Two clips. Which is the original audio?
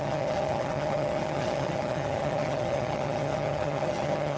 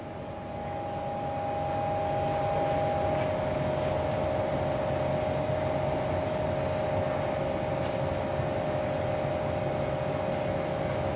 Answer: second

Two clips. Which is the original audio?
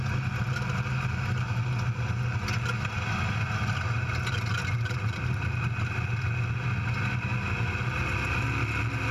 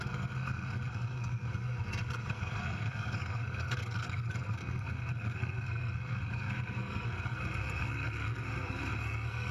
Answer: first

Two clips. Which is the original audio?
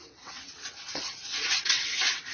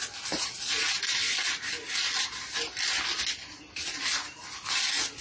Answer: second